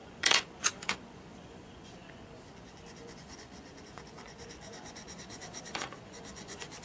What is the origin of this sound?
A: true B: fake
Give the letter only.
B